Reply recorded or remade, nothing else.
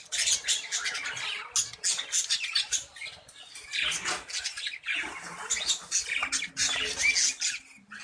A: recorded